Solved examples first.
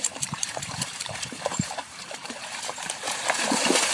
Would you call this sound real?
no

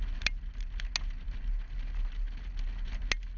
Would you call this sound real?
yes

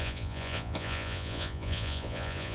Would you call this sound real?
no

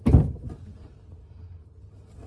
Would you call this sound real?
yes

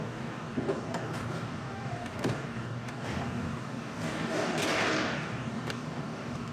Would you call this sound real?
no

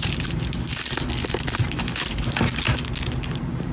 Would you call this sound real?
yes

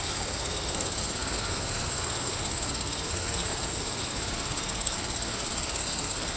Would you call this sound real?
no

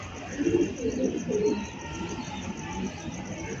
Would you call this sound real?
yes